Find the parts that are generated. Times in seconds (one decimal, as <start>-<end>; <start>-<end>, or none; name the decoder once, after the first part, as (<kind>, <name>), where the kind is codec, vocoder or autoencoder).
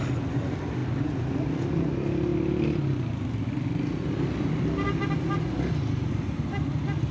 none